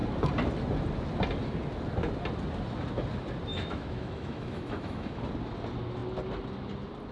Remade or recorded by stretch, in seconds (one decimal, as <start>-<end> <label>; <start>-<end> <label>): 0.0-3.5 recorded; 3.5-5.2 remade; 5.2-7.1 recorded